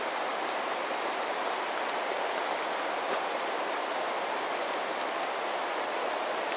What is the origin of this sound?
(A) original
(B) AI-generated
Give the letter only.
B